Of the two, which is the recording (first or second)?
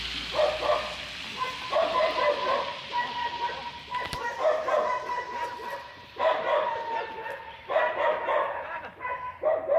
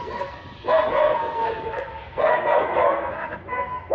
first